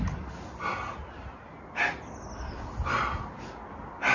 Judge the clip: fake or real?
real